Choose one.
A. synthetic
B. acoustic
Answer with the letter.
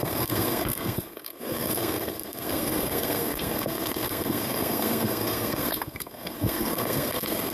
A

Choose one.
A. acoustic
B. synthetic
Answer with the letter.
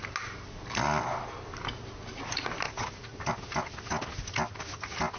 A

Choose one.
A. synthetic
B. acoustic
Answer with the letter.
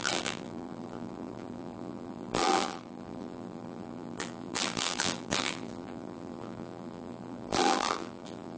A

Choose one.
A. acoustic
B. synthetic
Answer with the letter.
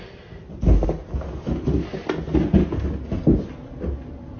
A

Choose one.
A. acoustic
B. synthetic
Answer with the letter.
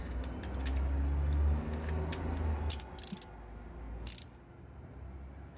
A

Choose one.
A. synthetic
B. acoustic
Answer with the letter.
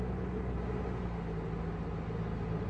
B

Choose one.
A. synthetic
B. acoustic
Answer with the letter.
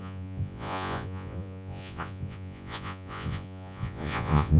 A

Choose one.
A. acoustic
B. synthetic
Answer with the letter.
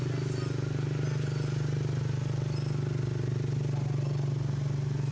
A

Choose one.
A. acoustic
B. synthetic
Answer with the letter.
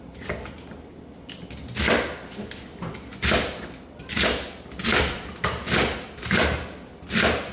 A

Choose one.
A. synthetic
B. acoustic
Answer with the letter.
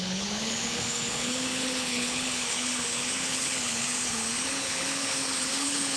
A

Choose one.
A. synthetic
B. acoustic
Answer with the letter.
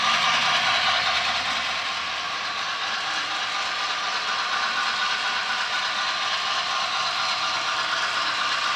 B